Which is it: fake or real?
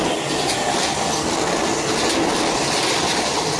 real